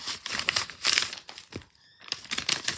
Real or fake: real